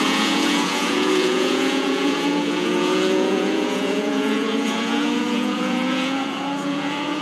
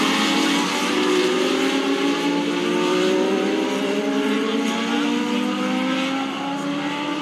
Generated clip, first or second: first